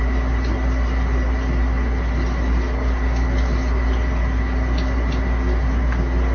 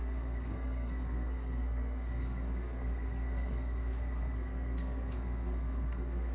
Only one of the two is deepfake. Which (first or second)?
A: second